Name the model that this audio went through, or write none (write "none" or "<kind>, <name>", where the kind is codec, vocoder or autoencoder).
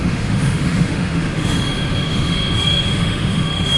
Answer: autoencoder, DAC-VAE